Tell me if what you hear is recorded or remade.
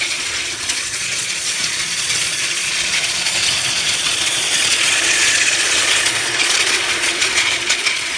remade